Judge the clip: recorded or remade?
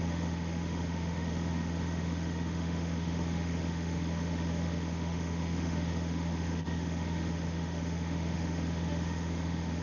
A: remade